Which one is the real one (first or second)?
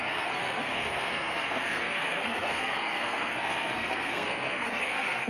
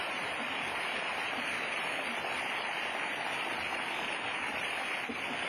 second